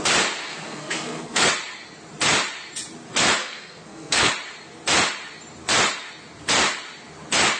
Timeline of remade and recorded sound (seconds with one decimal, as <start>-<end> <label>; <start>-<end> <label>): 0.0-0.5 recorded; 0.5-1.5 remade; 1.5-3.4 recorded; 3.4-4.3 remade; 4.3-7.6 recorded